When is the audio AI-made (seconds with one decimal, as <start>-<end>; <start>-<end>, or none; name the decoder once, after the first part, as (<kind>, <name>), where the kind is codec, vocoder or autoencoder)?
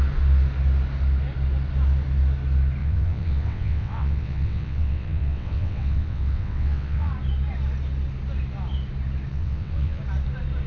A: 2.8-7.1 (vocoder, WaveNeXt); 9.3-10.0